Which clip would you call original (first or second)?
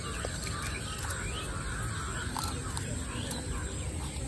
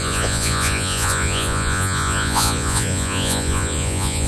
first